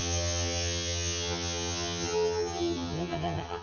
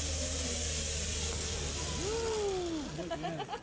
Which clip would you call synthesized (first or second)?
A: first